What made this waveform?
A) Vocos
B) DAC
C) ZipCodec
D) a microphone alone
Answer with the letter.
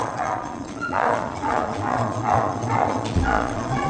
A